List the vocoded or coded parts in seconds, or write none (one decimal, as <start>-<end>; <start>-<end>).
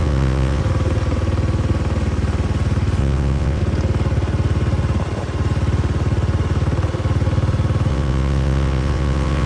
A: 0.0-0.6; 3.0-3.6; 7.9-9.5